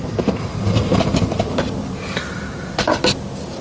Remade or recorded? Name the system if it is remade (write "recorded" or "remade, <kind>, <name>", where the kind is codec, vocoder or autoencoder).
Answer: recorded